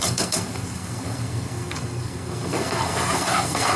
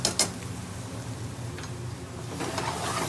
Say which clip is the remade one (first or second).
first